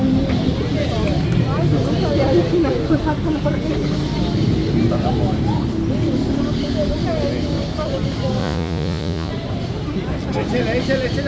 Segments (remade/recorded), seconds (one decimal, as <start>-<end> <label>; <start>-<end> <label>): 0.0-8.4 recorded; 8.4-9.3 remade; 9.3-11.3 recorded